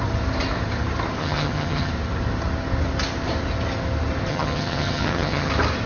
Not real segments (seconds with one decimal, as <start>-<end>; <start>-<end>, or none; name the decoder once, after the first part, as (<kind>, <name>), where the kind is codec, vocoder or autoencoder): 1.2-1.9 (vocoder, HiFi-GAN); 4.3-5.5